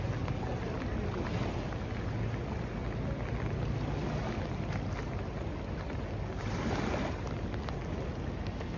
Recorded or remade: recorded